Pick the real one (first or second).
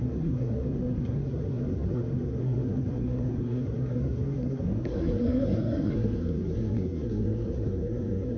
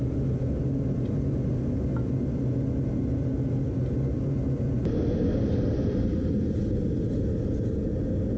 second